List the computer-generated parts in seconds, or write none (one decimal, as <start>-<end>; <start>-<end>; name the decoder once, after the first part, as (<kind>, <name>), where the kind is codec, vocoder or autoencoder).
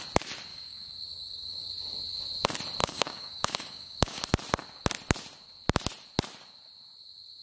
0.5-1.7 (codec, DAC); 2.8-4.2